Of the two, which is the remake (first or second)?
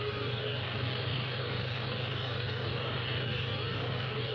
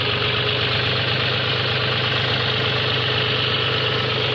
first